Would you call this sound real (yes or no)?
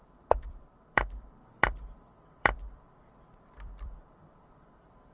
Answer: no